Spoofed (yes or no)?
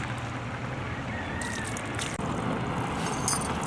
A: no